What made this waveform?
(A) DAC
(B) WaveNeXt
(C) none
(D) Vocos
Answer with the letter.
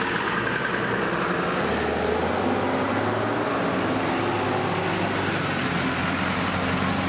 C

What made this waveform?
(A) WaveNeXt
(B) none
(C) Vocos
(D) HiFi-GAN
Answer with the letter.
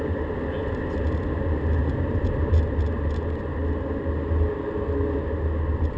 B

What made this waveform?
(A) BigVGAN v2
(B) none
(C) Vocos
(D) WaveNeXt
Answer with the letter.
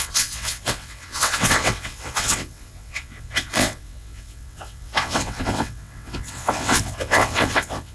D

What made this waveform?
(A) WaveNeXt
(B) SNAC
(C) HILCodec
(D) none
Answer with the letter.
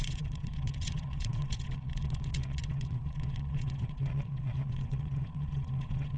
A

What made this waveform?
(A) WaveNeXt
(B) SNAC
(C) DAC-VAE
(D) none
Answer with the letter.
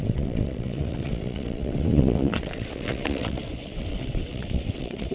A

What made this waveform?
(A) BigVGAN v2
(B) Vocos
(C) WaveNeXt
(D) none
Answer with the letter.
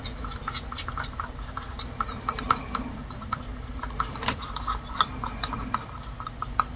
D